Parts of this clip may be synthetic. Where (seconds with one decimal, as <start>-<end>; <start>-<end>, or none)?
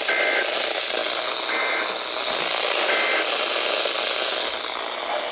none